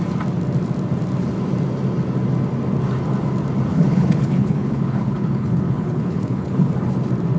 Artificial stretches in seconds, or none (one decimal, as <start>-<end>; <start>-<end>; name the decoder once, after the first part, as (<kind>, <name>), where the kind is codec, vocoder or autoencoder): 3.7-6.7 (codec, HILCodec)